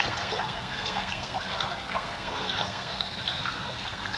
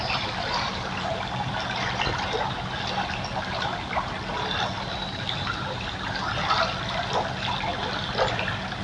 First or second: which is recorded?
second